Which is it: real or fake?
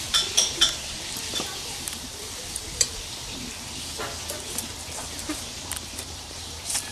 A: fake